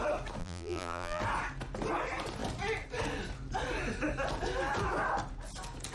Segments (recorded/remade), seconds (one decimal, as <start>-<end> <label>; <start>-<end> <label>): 0.0-0.4 recorded; 0.4-1.2 remade; 1.2-5.9 recorded